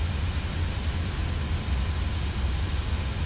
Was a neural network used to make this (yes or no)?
no